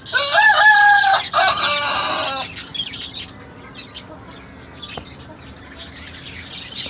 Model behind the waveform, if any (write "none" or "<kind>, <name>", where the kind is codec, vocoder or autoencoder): none